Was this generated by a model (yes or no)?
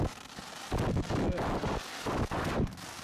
no